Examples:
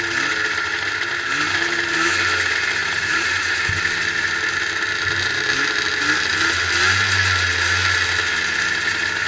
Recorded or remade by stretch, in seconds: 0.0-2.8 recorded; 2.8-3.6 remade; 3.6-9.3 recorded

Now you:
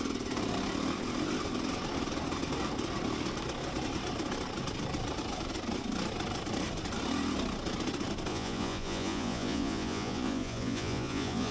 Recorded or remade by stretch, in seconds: 0.0-8.3 recorded; 8.3-11.5 remade

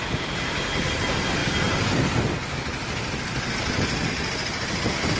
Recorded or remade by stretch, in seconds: 0.0-5.2 recorded

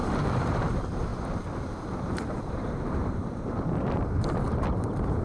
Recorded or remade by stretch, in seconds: 0.0-5.2 remade

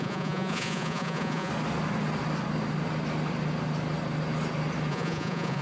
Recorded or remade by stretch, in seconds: 0.0-1.5 remade; 1.5-4.9 recorded; 4.9-5.6 remade

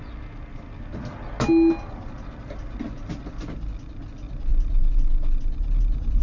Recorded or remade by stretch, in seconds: 0.0-6.2 recorded

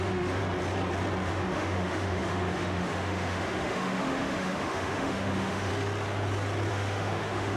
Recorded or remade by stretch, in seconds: 0.0-0.4 remade; 0.4-1.3 recorded; 1.3-5.7 remade; 5.7-6.7 recorded; 6.7-7.6 remade